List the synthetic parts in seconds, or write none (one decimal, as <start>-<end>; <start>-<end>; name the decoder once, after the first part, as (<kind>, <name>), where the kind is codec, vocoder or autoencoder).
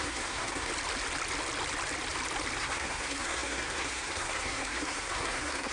0.0-0.7 (codec, SNAC); 2.6-5.7